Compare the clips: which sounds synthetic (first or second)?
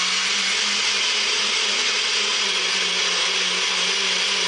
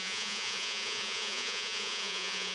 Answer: second